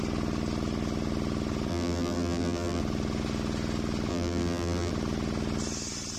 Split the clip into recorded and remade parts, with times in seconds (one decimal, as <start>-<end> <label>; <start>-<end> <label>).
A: 0.0-1.7 recorded; 1.7-2.8 remade; 2.8-4.1 recorded; 4.1-4.9 remade; 4.9-6.2 recorded